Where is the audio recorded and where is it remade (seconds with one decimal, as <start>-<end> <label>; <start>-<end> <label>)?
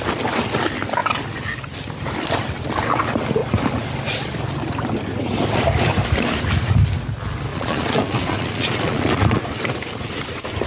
0.0-7.5 recorded; 7.5-9.4 remade; 9.4-10.7 recorded